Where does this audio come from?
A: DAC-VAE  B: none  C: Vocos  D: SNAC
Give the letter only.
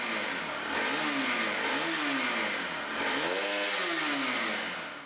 B